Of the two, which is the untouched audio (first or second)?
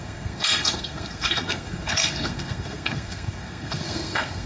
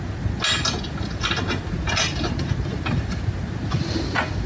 second